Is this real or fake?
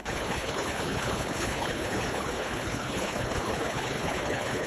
fake